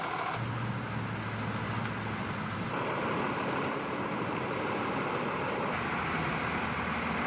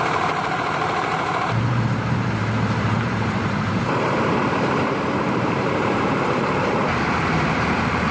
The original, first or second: first